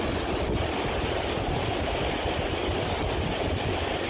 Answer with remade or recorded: recorded